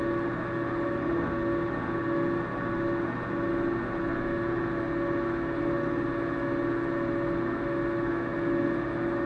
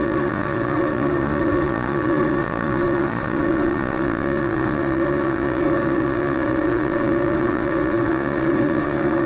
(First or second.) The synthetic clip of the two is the second